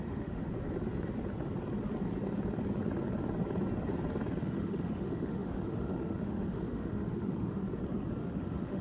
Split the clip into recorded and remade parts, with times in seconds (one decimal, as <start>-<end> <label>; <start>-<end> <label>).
0.0-0.4 remade; 0.4-4.4 recorded; 4.4-7.6 remade; 7.6-8.2 recorded; 8.2-8.8 remade